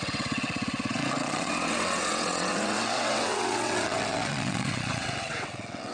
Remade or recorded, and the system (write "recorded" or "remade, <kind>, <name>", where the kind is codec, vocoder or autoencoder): remade, vocoder, WaveNeXt